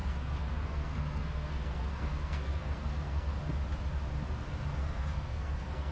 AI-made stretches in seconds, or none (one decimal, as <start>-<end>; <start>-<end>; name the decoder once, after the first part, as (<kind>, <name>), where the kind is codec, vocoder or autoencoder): 0.0-3.3 (codec, SNAC); 4.8-5.9